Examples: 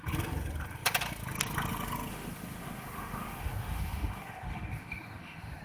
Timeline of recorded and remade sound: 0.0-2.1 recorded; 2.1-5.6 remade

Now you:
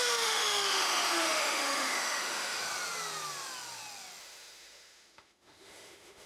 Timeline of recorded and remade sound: 0.0-2.6 remade; 2.6-4.2 recorded; 4.2-6.3 remade

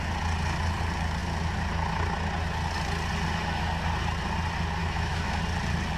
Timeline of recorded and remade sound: 0.0-4.8 recorded; 4.8-5.4 remade; 5.4-6.0 recorded

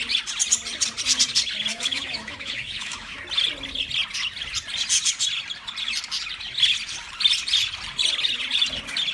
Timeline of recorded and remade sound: 0.0-1.7 recorded; 1.7-3.2 remade; 3.2-9.1 recorded

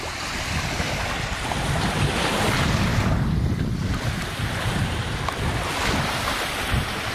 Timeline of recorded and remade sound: 0.0-7.1 recorded

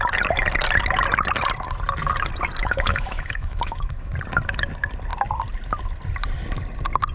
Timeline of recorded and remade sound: 0.0-2.6 recorded; 2.6-4.1 remade; 4.1-7.1 recorded

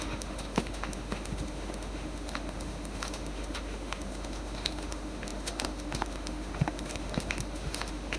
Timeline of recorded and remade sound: 0.0-8.2 remade

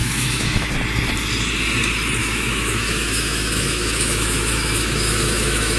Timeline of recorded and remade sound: 0.0-0.7 remade; 0.7-2.2 recorded; 2.2-5.8 remade